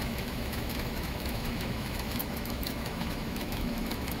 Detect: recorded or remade remade